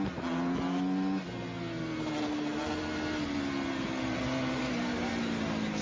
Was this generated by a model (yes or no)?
no